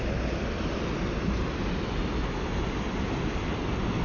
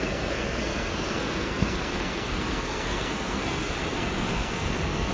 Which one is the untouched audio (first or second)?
first